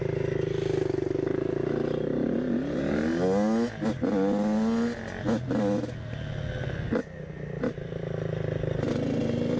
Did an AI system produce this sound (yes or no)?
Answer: no